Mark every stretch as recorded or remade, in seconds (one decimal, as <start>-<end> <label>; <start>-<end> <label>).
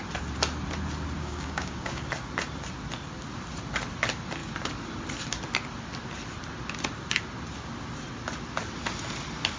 0.0-1.2 recorded; 1.2-2.1 remade; 2.1-9.6 recorded